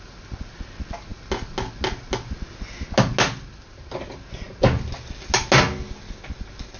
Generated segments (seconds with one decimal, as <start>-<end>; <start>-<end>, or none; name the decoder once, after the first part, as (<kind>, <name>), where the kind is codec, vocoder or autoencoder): none